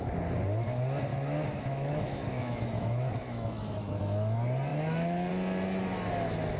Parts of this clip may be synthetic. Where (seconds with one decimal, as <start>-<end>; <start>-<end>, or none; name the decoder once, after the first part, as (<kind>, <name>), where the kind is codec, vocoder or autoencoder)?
1.1-4.0 (autoencoder, DAC-VAE); 4.7-5.3

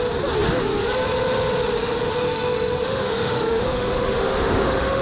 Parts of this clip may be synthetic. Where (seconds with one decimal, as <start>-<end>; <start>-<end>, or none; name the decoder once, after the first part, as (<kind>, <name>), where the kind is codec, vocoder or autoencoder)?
1.8-5.0 (autoencoder, DAC-VAE)

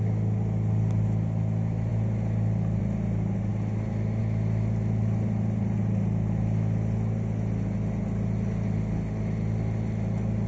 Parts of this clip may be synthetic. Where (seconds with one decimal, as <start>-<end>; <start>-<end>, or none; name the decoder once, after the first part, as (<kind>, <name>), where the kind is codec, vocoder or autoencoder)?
none

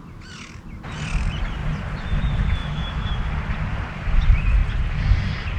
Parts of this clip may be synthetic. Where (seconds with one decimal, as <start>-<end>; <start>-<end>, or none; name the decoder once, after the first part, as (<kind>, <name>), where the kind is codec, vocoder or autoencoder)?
2.6-3.3 (autoencoder, DAC-VAE)

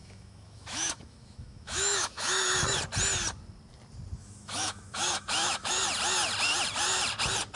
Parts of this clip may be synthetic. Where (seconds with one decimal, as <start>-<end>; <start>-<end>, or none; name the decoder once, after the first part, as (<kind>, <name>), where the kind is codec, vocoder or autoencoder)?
0.0-2.8 (autoencoder, DAC-VAE); 4.2-5.7

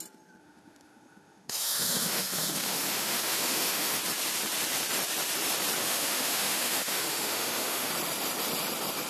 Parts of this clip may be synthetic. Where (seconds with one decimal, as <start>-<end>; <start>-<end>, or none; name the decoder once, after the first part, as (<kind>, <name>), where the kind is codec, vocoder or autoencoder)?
0.4-4.0 (autoencoder, DAC-VAE); 5.8-7.9

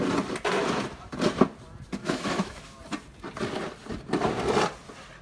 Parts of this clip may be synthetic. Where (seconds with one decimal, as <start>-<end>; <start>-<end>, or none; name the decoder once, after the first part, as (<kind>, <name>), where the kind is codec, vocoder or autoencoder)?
2.0-2.8 (autoencoder, DAC-VAE)

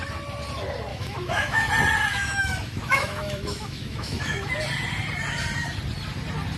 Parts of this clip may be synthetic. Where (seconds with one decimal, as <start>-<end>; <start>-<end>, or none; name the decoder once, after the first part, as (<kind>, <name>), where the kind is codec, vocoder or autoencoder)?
0.9-1.7 (autoencoder, DAC-VAE); 2.1-4.5